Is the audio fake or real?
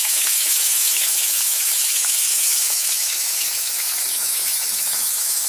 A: fake